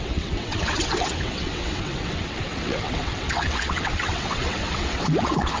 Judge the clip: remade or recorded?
remade